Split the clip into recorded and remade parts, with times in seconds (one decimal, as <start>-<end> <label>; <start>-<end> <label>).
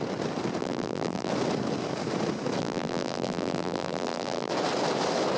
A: 0.0-0.6 recorded; 0.6-1.3 remade; 1.3-2.6 recorded; 2.6-4.5 remade; 4.5-5.4 recorded